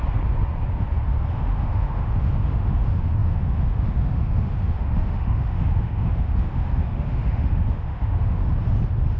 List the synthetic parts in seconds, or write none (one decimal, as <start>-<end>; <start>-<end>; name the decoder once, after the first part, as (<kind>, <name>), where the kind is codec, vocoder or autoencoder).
1.3-8.4 (autoencoder, DAC-VAE)